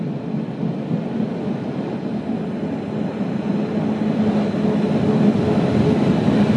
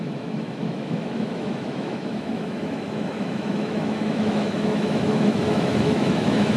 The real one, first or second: first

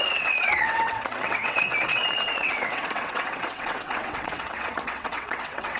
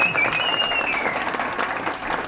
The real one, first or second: second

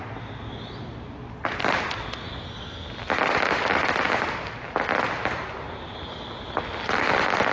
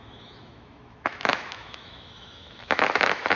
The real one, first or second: first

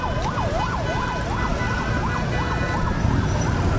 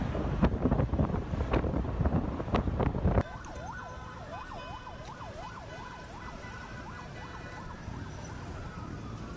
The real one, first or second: first